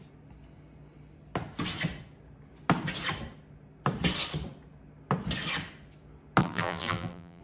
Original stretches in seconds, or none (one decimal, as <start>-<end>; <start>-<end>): 0.0-6.4